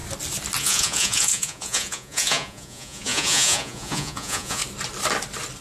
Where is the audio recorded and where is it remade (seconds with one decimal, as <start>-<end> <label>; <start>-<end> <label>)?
0.0-0.6 recorded; 0.6-4.6 remade; 4.6-5.6 recorded